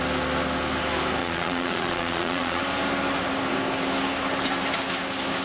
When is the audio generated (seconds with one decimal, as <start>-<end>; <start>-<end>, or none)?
1.2-2.6